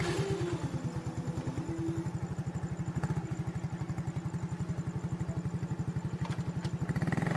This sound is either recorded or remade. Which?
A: recorded